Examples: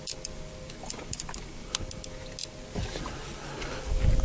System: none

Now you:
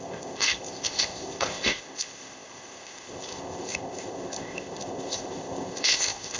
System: codec, ZipCodec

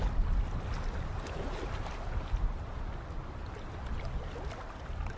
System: none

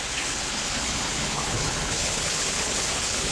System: codec, HILCodec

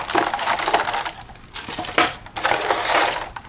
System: none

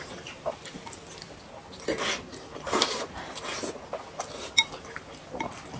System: none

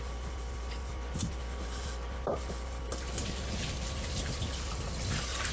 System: none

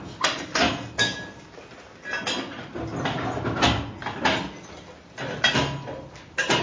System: none